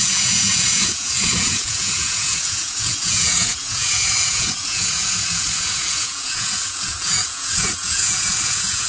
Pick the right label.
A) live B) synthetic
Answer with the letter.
B